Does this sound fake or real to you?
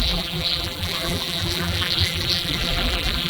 fake